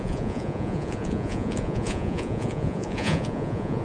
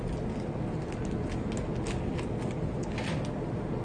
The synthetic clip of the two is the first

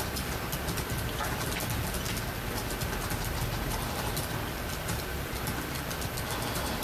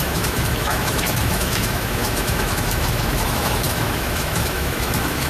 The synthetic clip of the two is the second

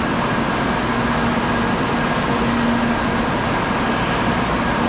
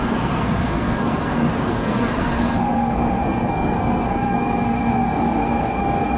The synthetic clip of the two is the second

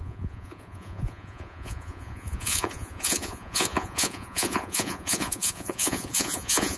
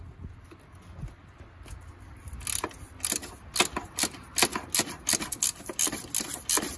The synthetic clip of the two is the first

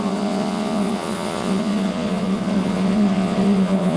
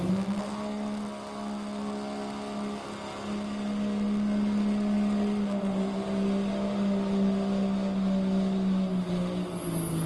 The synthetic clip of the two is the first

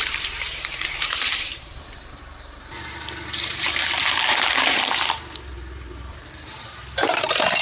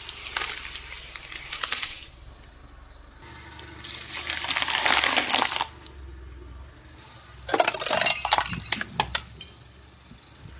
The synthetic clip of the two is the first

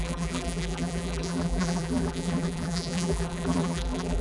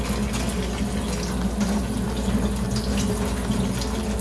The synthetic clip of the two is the first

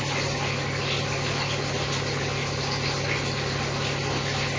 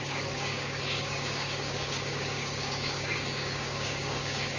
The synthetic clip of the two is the second